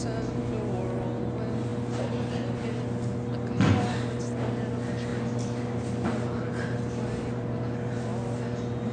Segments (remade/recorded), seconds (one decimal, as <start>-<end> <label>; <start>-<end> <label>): 0.0-8.9 recorded